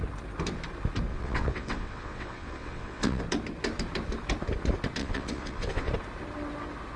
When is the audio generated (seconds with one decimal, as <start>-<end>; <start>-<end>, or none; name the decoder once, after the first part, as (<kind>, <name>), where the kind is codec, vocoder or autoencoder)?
1.1-3.2 (vocoder, WaveNeXt); 5.0-5.9